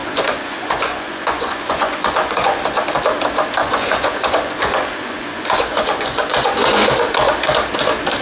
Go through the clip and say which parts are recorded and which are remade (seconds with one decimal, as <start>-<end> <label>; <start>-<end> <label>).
0.0-2.6 remade; 2.6-3.6 recorded; 3.6-6.9 remade; 6.9-8.2 recorded